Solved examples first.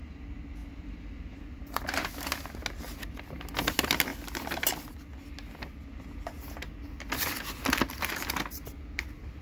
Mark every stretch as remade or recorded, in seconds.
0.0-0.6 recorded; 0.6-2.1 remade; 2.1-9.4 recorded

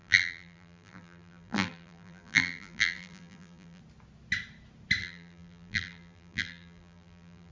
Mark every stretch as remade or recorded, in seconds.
0.0-3.8 remade; 3.8-5.0 recorded; 5.0-7.5 remade

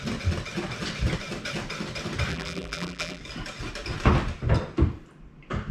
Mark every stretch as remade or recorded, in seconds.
0.0-2.3 recorded; 2.3-3.2 remade; 3.2-5.7 recorded

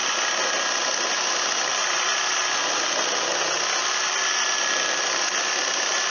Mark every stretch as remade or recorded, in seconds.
0.0-6.1 recorded

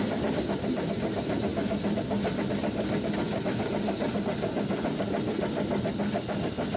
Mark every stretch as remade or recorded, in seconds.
0.0-6.8 recorded

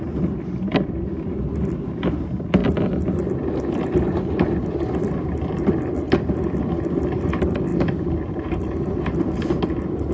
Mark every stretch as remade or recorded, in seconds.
0.0-0.7 recorded; 0.7-1.5 remade; 1.5-2.6 recorded; 2.6-5.1 remade; 5.1-7.7 recorded; 7.7-8.6 remade; 8.6-10.1 recorded

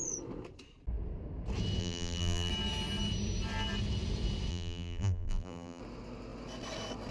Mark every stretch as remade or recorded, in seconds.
0.0-1.8 recorded; 1.8-2.5 remade; 2.5-4.5 recorded; 4.5-5.8 remade; 5.8-7.1 recorded

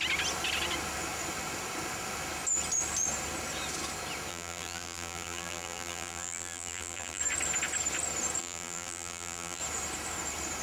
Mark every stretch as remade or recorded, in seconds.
0.0-4.3 recorded; 4.3-7.2 remade; 7.2-8.4 recorded; 8.4-9.6 remade; 9.6-10.6 recorded